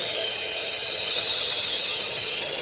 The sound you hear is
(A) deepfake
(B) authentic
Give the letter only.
A